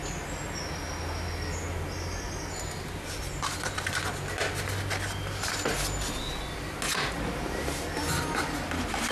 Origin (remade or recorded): recorded